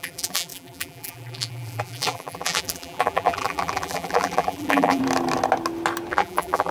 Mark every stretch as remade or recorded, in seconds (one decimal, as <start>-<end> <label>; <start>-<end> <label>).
0.0-5.0 remade; 5.0-6.1 recorded; 6.1-6.7 remade